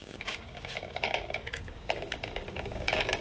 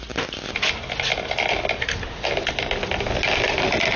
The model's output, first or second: first